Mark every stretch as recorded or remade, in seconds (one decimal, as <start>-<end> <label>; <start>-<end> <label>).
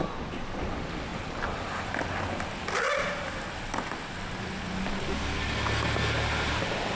0.0-1.1 recorded; 1.1-1.9 remade; 1.9-6.9 recorded